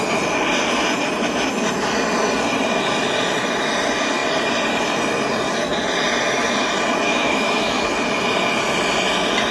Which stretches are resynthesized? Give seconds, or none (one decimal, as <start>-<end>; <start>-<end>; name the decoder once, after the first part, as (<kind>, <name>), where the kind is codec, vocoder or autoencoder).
7.1-7.9 (autoencoder, DAC-VAE)